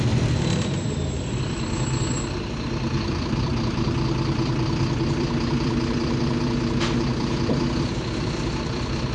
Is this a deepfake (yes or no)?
yes